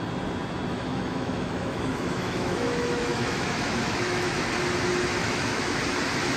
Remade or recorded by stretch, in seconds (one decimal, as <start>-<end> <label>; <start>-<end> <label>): 0.0-0.7 recorded; 0.7-4.5 remade; 4.5-5.2 recorded; 5.2-5.8 remade; 5.8-6.4 recorded